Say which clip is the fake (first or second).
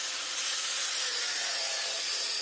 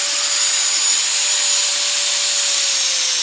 first